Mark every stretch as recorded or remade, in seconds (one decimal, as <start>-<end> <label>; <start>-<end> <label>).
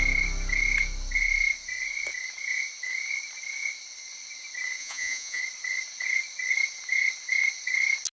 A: 0.0-4.8 recorded; 4.8-5.4 remade; 5.4-8.2 recorded